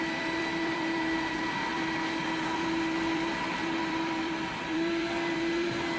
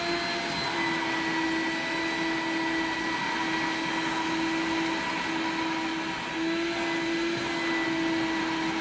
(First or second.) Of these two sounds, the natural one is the second